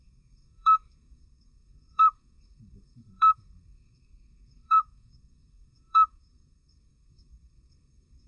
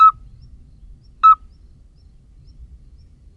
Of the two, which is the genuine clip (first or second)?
second